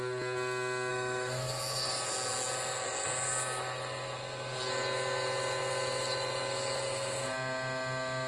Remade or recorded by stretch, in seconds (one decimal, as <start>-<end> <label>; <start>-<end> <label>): 0.0-0.9 recorded; 0.9-1.6 remade; 1.6-8.3 recorded